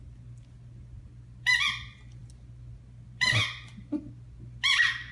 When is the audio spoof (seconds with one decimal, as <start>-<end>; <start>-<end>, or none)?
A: none